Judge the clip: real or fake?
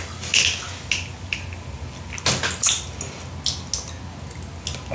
real